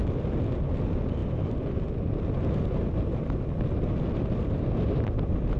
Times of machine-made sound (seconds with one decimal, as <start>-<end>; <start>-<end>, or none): none